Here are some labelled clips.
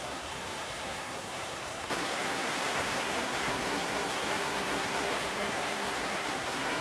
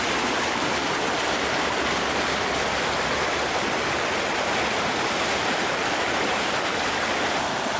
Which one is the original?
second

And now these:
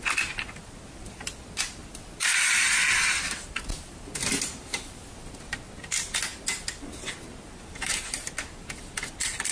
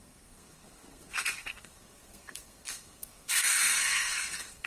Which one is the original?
first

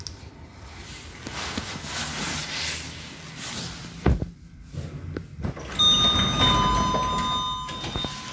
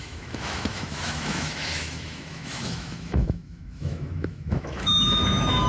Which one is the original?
first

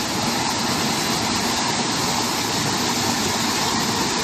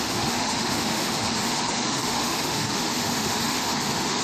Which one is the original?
first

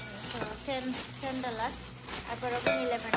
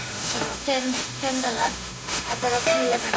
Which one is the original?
first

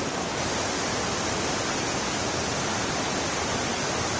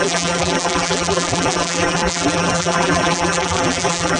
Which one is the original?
first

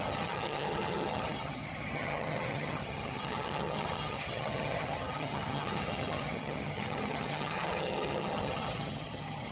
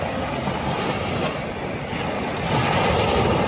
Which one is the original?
second